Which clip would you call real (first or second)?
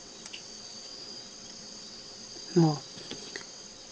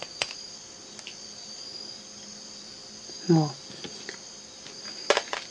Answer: second